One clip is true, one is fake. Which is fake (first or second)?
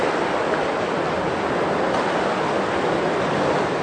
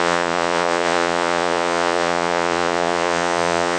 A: second